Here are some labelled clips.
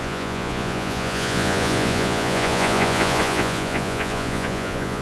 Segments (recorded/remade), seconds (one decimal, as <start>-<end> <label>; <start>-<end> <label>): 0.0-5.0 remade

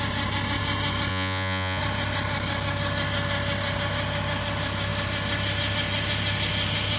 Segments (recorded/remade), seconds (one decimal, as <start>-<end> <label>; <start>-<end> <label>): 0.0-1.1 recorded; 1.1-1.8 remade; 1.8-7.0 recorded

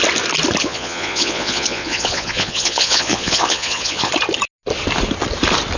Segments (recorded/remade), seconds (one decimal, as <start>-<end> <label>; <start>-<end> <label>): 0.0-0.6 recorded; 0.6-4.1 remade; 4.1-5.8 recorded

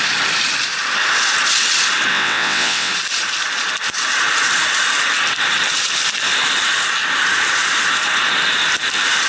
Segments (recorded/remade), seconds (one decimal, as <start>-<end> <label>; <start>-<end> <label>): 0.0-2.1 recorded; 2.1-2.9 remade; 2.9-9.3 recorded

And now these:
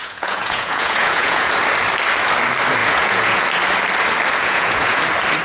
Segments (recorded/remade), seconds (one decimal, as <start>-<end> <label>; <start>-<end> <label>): 0.0-1.5 remade; 1.5-2.8 recorded; 2.8-3.4 remade; 3.4-4.4 recorded; 4.4-5.0 remade; 5.0-5.4 recorded